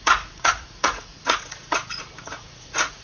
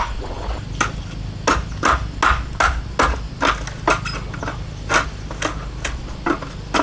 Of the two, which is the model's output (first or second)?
first